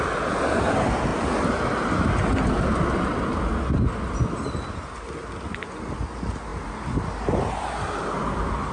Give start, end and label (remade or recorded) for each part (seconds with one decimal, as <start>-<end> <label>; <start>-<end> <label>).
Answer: 0.0-8.7 recorded